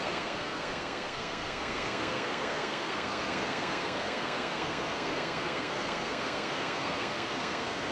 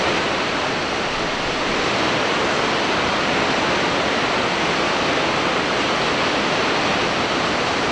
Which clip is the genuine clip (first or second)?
second